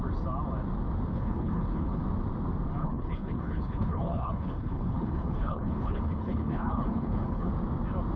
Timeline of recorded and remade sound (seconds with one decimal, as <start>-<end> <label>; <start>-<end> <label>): 0.0-1.1 recorded; 1.1-2.0 remade; 2.0-2.8 recorded; 2.8-7.5 remade; 7.5-8.2 recorded